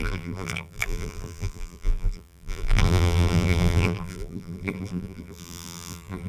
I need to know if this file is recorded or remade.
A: remade